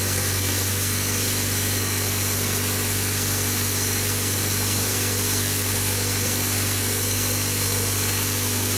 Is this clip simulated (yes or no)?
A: yes